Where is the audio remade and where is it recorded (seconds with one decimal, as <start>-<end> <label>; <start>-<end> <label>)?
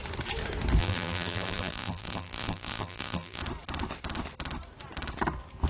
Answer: 0.0-0.8 recorded; 0.8-3.4 remade; 3.4-5.7 recorded